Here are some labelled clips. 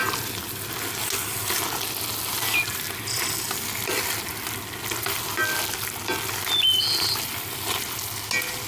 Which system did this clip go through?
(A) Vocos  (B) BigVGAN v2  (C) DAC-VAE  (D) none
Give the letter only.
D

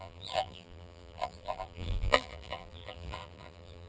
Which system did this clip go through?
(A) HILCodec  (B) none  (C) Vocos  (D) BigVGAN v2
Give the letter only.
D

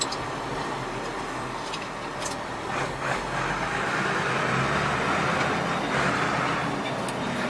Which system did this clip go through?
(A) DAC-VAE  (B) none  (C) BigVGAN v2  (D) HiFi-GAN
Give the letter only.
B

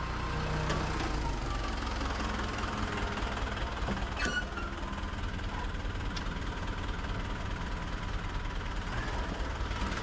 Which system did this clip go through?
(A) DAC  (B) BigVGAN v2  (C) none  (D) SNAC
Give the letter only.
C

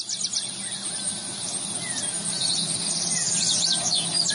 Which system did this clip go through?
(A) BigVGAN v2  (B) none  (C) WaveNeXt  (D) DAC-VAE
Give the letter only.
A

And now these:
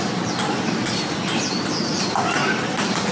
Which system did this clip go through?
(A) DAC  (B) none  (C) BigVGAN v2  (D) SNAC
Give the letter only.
C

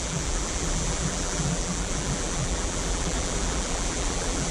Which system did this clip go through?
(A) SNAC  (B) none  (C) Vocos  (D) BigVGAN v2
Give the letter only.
D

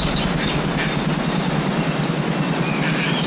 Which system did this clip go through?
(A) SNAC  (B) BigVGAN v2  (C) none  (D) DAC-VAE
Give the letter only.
C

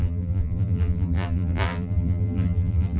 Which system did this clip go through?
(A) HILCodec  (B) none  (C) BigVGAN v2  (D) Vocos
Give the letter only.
C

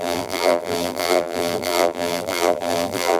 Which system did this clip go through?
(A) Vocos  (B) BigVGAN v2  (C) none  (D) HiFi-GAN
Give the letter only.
B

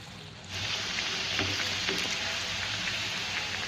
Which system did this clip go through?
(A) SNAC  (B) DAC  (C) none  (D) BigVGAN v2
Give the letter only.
C